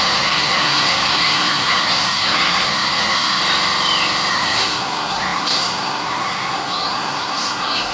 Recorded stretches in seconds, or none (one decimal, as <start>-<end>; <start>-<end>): 3.4-4.3